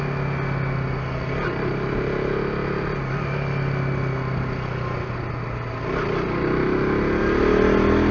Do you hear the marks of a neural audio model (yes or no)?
no